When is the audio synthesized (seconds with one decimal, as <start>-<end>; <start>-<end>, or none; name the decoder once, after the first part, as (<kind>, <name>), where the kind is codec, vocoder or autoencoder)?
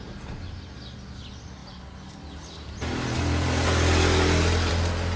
none